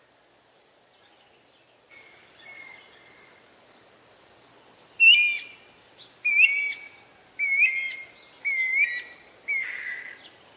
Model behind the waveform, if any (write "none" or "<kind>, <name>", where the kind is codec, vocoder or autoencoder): none